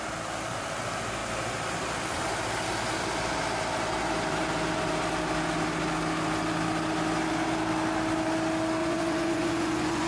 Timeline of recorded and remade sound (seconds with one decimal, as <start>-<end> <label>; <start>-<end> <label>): 0.0-8.8 recorded; 8.8-10.1 remade